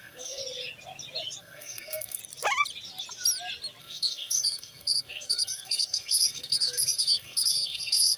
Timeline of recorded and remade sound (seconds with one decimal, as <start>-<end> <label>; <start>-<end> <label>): 0.0-0.4 remade; 0.4-1.4 recorded; 1.4-2.2 remade; 2.2-3.8 recorded; 3.8-8.2 remade